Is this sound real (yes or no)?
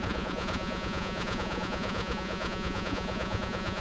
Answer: no